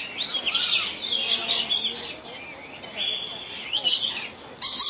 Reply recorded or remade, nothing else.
recorded